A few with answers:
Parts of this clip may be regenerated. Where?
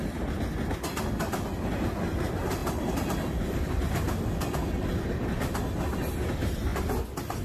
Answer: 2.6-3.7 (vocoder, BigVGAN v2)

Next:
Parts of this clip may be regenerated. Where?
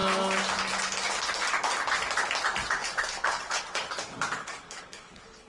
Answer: 2.8-3.6 (codec, HILCodec); 4.4-5.5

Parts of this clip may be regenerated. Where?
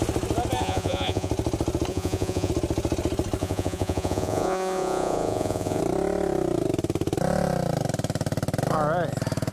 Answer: 0.6-1.3 (vocoder, Vocos); 1.9-2.5; 3.4-5.8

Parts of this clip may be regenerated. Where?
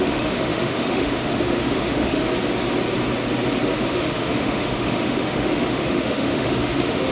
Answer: 0.0-2.2 (autoencoder, DAC-VAE); 3.9-7.1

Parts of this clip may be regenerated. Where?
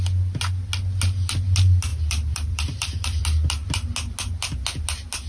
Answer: 1.9-3.2 (vocoder, BigVGAN v2)